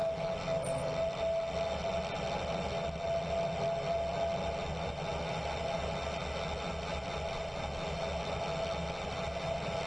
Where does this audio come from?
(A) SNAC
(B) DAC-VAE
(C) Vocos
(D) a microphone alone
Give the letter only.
D